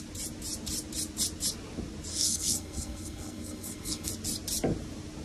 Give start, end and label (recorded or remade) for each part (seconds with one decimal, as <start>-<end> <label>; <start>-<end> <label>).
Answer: 0.0-2.1 recorded; 2.1-4.1 remade; 4.1-5.2 recorded